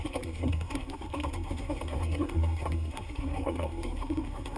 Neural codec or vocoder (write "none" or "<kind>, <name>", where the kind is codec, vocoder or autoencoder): codec, SNAC